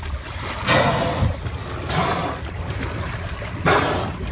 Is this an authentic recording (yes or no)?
yes